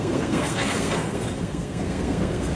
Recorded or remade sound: remade